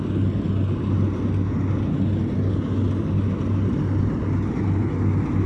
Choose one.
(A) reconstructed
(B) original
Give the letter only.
B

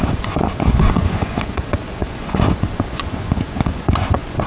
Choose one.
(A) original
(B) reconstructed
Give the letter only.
B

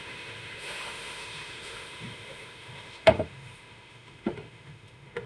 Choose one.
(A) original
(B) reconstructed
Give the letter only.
B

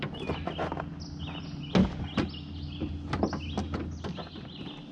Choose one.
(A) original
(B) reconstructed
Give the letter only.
A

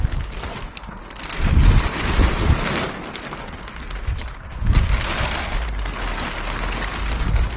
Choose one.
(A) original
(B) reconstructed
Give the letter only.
A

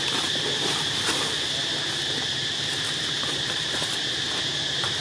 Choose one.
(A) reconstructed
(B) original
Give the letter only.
A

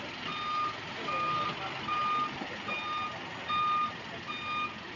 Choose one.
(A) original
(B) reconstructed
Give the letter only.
A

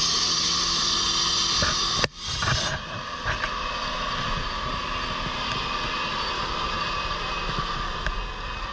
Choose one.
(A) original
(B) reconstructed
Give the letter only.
A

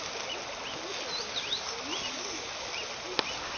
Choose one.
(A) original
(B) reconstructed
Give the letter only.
A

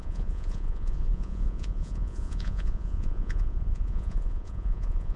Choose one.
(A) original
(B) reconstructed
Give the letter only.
B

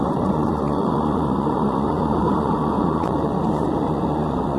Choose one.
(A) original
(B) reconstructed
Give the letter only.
B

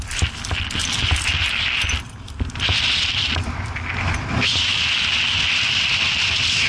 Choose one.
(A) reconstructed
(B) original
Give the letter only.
B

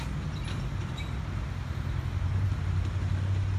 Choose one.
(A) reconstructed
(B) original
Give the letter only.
B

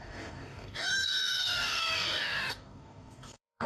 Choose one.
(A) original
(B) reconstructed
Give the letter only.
B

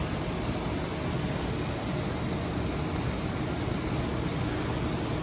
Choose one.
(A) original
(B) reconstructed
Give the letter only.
A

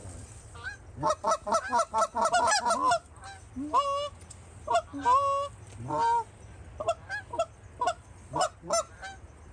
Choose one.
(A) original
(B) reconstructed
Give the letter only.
A